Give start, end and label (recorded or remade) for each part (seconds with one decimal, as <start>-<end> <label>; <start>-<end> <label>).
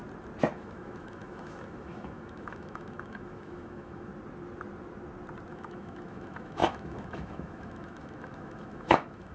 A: 0.0-0.5 recorded; 0.5-4.1 remade; 4.1-5.5 recorded; 5.5-9.3 remade